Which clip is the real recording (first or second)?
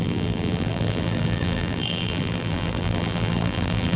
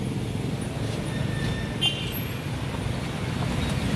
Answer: second